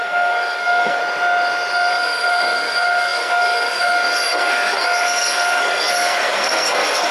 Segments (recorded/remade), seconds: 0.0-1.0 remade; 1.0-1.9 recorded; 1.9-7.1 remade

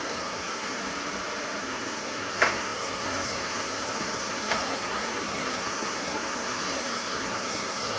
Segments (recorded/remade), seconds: 0.0-0.8 remade; 0.8-1.6 recorded; 1.6-8.0 remade

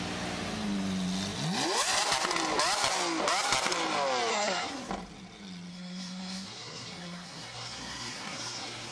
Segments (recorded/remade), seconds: 0.0-4.3 recorded; 4.3-4.9 remade; 4.9-5.7 recorded; 5.7-8.9 remade

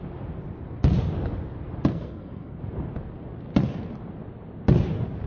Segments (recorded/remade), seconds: 0.0-1.9 recorded; 1.9-2.6 remade; 2.6-5.3 recorded

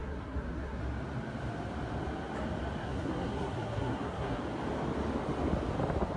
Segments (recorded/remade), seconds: 0.0-0.8 remade; 0.8-2.8 recorded; 2.8-4.4 remade; 4.4-6.2 recorded